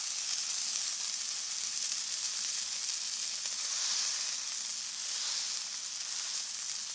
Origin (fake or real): real